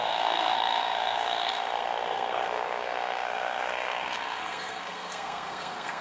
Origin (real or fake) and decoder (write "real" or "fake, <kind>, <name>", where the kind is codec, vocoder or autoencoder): fake, codec, SNAC